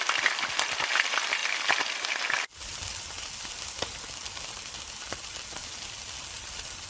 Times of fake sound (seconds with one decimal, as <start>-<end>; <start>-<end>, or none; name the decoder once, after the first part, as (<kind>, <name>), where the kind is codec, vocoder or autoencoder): none